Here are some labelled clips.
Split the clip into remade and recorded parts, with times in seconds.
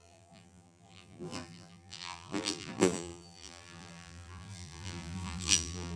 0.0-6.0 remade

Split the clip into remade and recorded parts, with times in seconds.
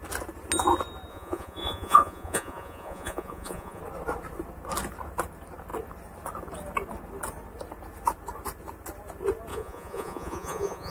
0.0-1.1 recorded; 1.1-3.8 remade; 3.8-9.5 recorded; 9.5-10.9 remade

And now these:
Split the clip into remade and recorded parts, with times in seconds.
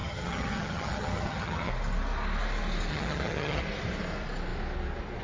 0.0-1.7 remade; 1.7-2.9 recorded; 2.9-3.6 remade; 3.6-5.2 recorded